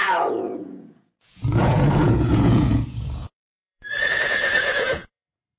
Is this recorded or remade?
remade